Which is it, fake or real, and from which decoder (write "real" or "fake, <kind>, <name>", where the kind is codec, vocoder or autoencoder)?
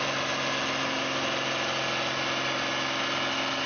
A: real